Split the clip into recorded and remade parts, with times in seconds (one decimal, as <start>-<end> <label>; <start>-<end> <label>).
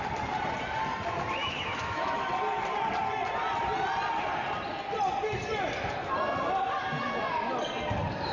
0.0-1.4 recorded; 1.4-2.3 remade; 2.3-8.3 recorded